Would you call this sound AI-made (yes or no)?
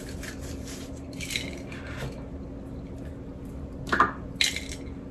no